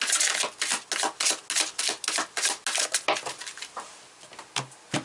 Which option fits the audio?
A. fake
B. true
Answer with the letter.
B